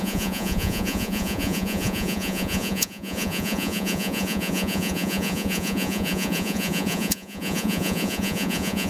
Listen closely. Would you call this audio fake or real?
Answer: fake